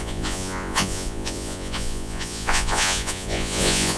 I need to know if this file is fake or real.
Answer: fake